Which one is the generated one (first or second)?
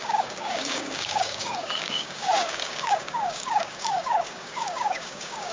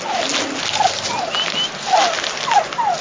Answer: first